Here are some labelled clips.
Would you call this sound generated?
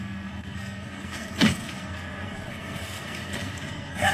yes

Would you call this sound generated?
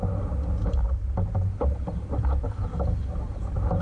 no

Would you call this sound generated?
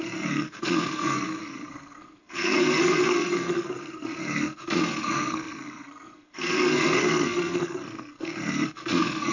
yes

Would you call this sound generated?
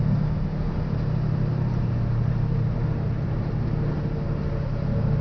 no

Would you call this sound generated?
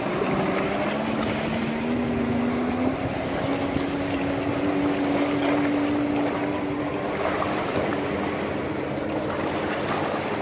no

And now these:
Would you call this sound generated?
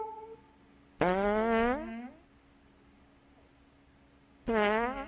no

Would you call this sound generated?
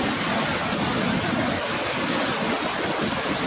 no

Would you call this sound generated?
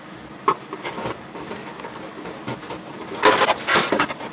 no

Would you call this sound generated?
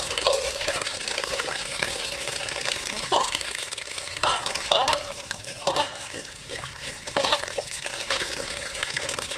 yes